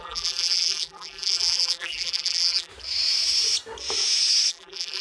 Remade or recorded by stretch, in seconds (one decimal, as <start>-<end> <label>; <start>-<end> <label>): 0.0-2.7 remade; 2.7-4.5 recorded; 4.5-5.0 remade